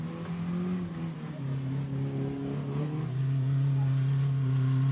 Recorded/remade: recorded